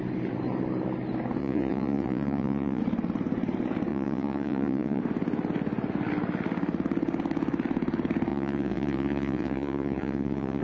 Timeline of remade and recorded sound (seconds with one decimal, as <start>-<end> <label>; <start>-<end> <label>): 0.0-1.4 recorded; 1.4-2.8 remade; 2.8-3.9 recorded; 3.9-5.0 remade; 5.0-8.3 recorded; 8.3-10.6 remade